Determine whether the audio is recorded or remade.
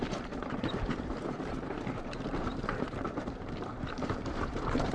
remade